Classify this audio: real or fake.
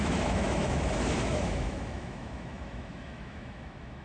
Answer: fake